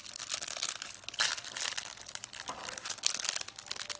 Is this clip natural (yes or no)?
yes